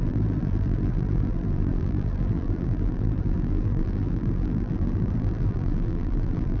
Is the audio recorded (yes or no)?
no